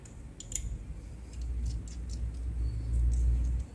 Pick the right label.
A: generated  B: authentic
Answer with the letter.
B